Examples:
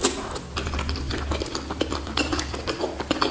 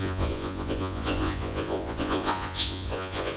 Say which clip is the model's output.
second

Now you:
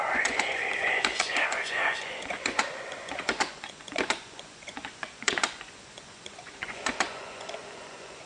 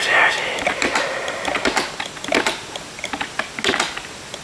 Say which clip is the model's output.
first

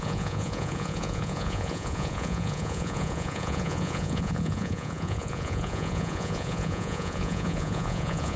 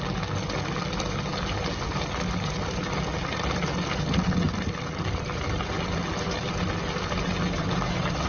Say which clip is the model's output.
first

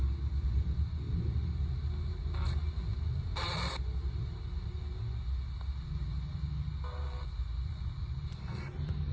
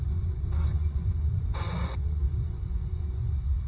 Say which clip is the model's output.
second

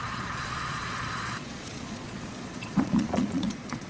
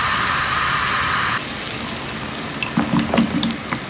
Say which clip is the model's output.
first